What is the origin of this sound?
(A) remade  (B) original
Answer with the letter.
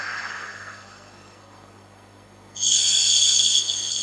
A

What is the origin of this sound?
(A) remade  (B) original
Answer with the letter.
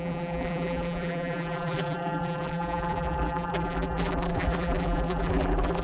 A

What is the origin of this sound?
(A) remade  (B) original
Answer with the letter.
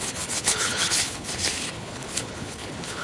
A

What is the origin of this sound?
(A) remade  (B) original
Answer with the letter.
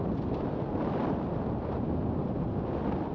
B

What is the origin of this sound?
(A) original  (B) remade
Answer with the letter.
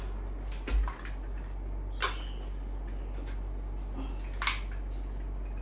A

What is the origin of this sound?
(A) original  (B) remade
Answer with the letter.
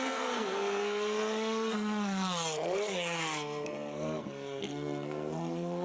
B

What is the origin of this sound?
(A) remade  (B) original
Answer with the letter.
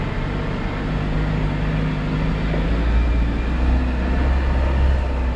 B